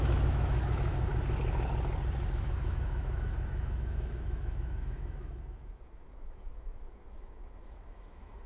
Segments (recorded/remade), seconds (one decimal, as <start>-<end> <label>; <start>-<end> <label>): 0.0-1.1 remade; 1.1-2.4 recorded; 2.4-8.5 remade